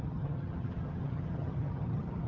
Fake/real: fake